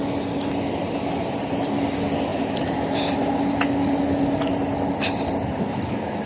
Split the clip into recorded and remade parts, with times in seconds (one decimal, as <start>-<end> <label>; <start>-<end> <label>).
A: 0.0-6.3 recorded